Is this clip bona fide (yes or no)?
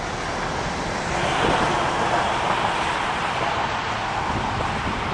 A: no